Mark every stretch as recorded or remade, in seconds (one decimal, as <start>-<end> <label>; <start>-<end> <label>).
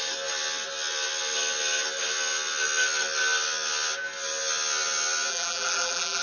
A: 0.0-5.3 recorded; 5.3-6.2 remade